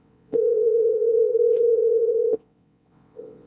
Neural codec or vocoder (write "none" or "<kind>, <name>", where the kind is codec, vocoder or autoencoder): vocoder, WaveNeXt